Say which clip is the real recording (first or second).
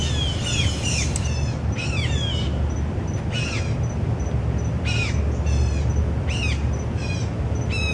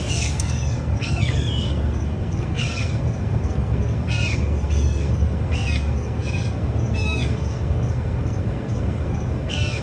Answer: first